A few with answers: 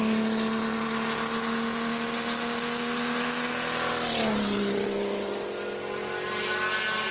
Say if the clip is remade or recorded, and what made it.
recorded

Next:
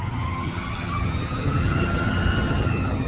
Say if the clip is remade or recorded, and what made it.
remade, vocoder, HiFi-GAN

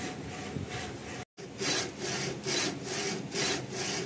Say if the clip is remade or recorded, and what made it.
recorded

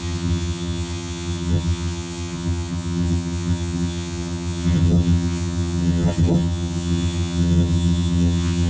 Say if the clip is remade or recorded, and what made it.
remade, vocoder, HiFi-GAN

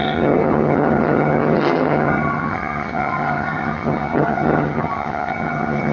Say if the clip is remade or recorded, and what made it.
remade, vocoder, HiFi-GAN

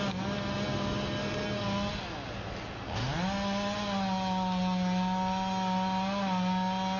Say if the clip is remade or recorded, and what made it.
recorded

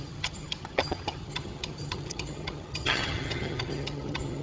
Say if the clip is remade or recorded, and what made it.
remade, vocoder, HiFi-GAN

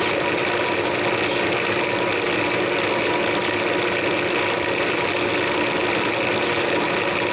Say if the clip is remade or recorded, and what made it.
recorded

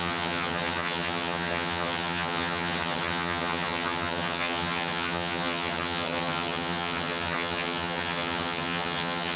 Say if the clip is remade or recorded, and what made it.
remade, vocoder, HiFi-GAN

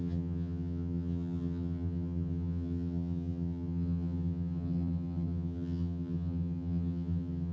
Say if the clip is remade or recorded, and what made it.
remade, vocoder, HiFi-GAN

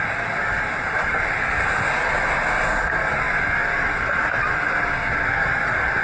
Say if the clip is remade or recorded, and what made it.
recorded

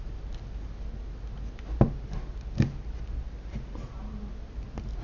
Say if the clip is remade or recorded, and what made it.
recorded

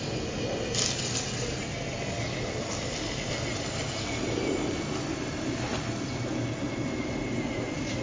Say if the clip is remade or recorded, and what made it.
recorded